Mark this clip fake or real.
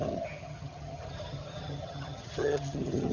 fake